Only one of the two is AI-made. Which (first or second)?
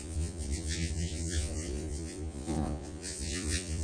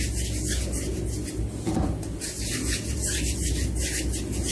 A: first